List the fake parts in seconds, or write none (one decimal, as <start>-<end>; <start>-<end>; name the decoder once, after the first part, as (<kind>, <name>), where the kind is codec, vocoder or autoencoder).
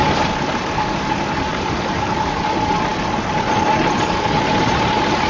1.5-2.4 (vocoder, BigVGAN v2)